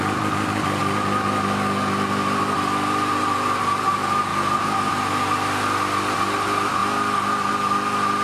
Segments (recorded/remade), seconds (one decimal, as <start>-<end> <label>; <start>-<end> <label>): 0.0-8.2 recorded